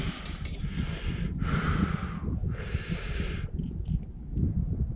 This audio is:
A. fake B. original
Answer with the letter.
B